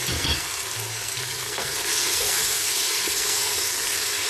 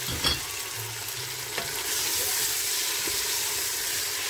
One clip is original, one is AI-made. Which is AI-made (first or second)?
first